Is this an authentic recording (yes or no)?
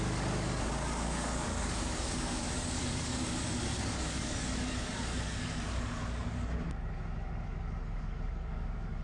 no